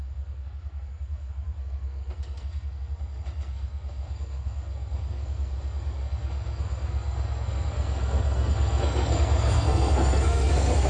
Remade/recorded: remade